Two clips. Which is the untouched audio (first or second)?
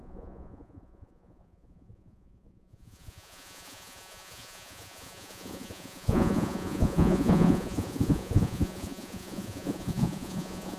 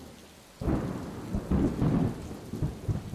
second